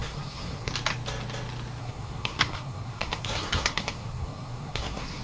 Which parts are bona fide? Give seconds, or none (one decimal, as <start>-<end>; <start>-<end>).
0.7-1.8